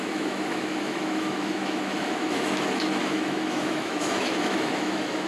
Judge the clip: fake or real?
fake